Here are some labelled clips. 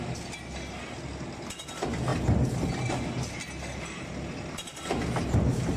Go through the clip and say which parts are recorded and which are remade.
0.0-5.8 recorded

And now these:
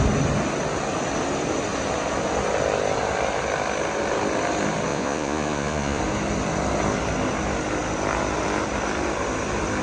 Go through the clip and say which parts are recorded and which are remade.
0.0-4.9 recorded; 4.9-6.0 remade; 6.0-9.8 recorded

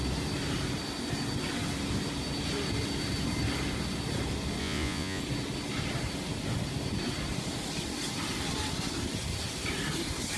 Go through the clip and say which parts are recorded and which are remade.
0.0-4.6 recorded; 4.6-5.2 remade; 5.2-10.4 recorded

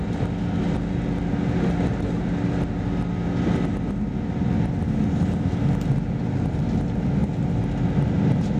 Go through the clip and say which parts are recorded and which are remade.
0.0-8.6 recorded